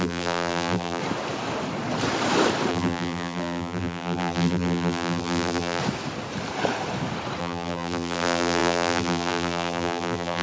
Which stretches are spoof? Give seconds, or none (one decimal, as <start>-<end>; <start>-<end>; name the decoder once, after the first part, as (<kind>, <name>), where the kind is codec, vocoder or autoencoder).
0.0-1.0 (vocoder, BigVGAN v2); 2.7-5.8; 7.4-10.4